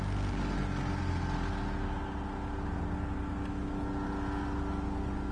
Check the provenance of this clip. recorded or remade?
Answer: recorded